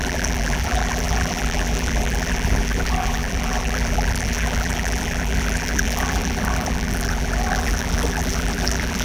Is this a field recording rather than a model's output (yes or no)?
no